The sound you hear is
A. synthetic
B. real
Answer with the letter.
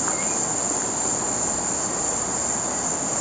B